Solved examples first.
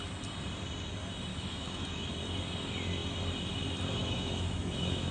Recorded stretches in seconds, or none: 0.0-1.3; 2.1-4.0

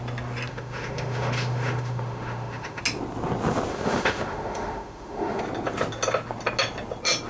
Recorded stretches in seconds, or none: 0.0-0.5; 2.8-3.7; 5.4-7.3